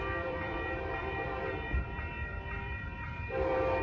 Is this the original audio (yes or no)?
no